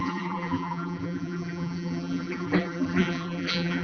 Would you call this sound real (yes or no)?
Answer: no